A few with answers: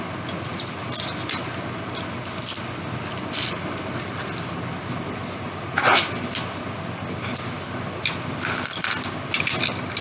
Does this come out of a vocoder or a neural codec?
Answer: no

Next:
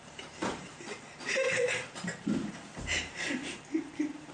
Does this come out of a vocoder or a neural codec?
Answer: yes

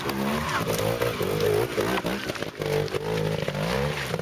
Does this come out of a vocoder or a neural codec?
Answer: no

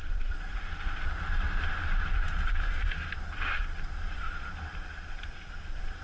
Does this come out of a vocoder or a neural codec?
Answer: no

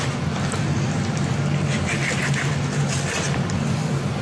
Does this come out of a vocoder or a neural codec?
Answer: no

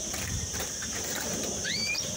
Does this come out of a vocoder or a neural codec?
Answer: yes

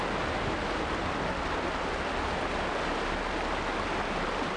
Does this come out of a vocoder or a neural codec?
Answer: no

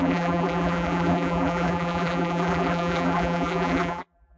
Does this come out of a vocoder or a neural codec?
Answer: yes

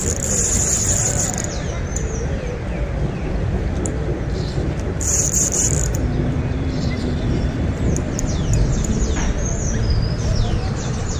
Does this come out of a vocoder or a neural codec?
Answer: yes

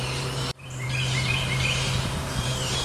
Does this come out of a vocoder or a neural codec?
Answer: yes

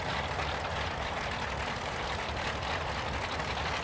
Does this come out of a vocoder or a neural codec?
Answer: no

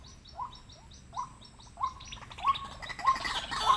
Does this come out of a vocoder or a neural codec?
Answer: no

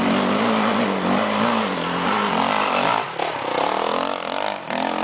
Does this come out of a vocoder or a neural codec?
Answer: no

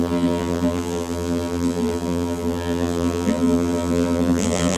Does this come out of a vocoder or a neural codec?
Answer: yes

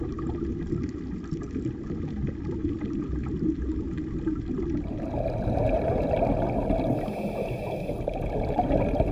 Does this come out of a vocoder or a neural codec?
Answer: no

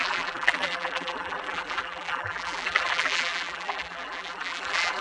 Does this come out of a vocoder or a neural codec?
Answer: yes